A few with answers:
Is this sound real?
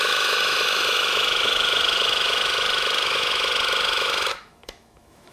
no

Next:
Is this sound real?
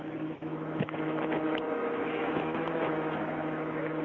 no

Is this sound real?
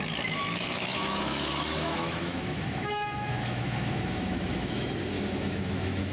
no